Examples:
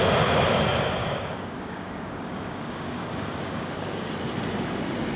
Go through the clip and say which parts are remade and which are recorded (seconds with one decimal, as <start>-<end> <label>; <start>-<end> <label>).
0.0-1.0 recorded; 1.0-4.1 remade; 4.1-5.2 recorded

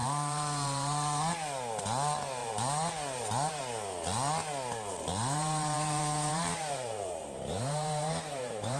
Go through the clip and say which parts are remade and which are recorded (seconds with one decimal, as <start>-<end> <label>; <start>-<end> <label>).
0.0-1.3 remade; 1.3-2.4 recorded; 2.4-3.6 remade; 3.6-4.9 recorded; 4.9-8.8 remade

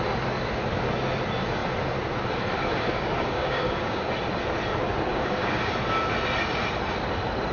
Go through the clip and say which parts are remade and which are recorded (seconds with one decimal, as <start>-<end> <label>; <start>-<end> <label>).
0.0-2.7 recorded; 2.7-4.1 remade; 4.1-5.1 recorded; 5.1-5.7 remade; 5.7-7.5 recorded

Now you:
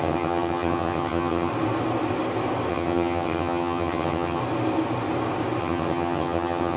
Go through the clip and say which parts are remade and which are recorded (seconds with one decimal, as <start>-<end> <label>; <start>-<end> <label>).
0.0-1.5 remade; 1.5-2.7 recorded; 2.7-4.4 remade; 4.4-5.6 recorded; 5.6-6.8 remade

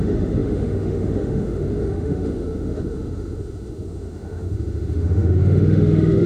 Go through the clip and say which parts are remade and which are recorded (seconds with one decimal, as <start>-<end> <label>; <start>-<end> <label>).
0.0-6.3 remade